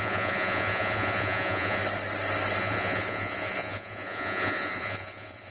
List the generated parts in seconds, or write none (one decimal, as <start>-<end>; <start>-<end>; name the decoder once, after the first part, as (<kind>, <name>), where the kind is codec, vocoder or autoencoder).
0.0-1.8 (vocoder, Vocos); 2.6-5.5

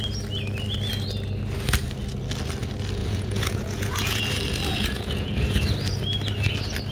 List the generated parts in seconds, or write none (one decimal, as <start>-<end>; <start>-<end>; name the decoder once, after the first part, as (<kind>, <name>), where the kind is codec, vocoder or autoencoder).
3.0-4.2 (vocoder, Vocos); 4.7-5.6

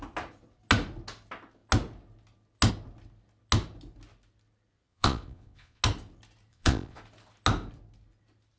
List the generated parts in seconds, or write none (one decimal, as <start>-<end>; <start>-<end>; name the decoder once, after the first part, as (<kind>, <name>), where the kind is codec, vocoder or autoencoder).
4.9-5.8 (vocoder, Vocos); 6.5-7.0

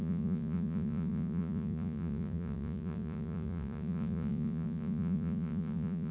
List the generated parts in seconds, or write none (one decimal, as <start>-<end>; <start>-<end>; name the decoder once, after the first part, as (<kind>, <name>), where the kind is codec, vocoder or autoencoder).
0.0-6.1 (vocoder, Vocos)

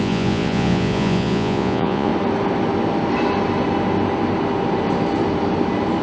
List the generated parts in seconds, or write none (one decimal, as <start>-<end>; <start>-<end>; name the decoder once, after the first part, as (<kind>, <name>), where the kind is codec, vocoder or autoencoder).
0.0-2.1 (vocoder, Vocos)

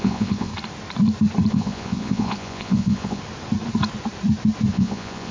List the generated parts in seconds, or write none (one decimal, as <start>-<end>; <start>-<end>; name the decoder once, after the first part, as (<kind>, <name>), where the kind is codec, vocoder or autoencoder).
0.0-0.5 (vocoder, Vocos); 1.5-3.2; 4.7-5.3